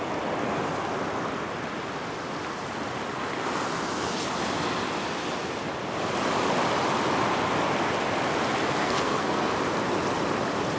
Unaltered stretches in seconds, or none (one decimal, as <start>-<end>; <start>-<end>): 0.0-8.8; 9.5-10.8

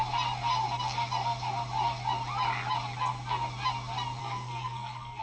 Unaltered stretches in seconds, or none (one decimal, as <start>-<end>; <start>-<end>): 0.0-4.2

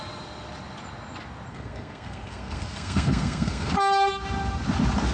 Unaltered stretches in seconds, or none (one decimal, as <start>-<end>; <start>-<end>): 0.0-1.5; 3.7-5.1

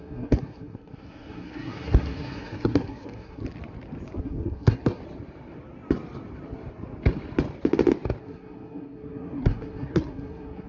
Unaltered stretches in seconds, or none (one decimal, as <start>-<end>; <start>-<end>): 3.4-4.2; 5.0-8.2

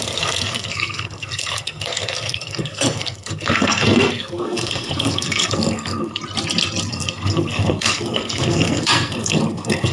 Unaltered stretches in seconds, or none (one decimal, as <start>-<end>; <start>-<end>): 6.2-6.9

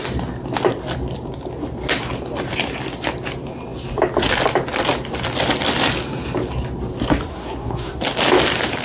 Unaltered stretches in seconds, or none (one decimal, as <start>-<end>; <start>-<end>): 0.0-7.3; 8.0-8.8

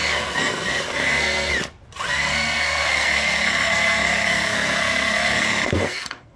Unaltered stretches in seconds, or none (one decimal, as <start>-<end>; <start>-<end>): 1.5-2.1